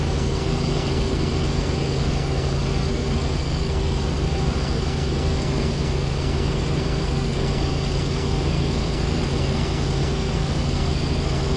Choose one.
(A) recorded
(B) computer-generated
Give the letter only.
B